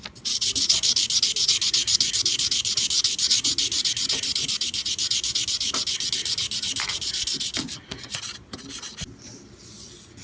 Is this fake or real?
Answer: real